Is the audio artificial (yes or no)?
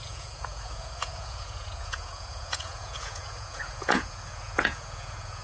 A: yes